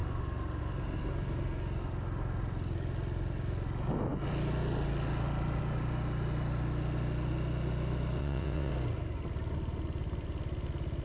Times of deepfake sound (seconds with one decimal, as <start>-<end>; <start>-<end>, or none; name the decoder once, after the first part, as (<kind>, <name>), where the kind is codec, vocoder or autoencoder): 8.2-8.7 (vocoder, WaveNeXt)